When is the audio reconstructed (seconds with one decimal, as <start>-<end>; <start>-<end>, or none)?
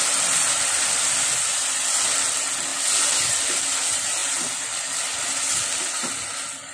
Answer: none